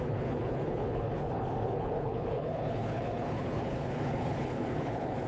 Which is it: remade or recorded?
remade